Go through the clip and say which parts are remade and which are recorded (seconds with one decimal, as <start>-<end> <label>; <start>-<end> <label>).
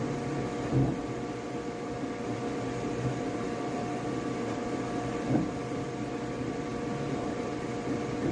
0.0-8.3 recorded